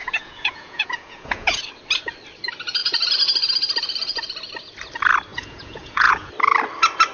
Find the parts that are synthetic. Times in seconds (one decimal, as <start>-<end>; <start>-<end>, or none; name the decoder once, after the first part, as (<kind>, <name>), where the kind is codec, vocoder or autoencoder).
0.0-1.6 (vocoder, Vocos); 5.3-6.3